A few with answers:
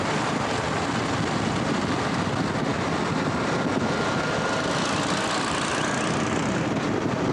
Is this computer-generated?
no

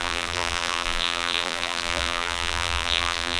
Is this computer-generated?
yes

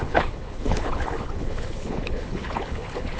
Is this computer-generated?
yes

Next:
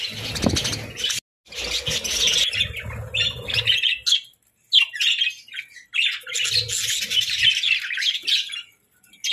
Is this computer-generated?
no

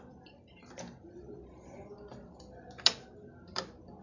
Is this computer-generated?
no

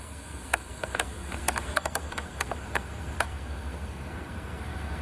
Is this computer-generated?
yes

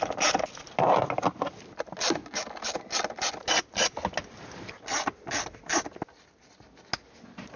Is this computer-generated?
no